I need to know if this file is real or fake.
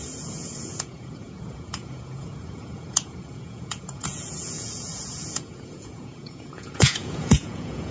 fake